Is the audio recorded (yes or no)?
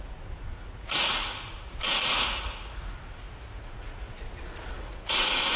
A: no